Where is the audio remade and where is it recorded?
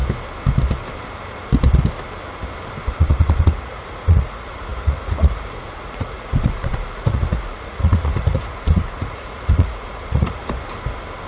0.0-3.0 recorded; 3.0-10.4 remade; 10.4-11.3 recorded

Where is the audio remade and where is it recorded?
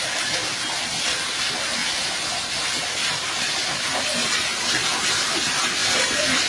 0.0-6.5 recorded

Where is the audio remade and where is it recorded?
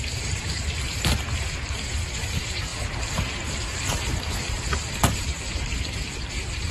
0.0-6.7 remade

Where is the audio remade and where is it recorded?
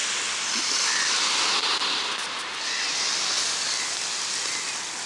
0.0-5.1 recorded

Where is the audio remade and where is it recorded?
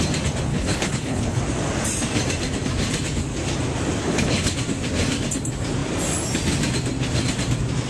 0.0-0.5 recorded; 0.5-1.4 remade; 1.4-4.0 recorded; 4.0-4.6 remade; 4.6-7.9 recorded